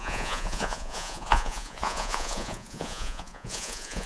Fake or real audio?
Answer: fake